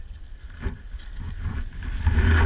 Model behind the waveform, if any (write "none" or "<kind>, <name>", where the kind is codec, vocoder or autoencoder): none